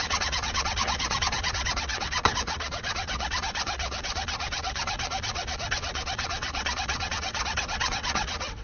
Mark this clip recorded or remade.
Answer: remade